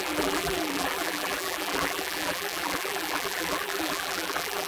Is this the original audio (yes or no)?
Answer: no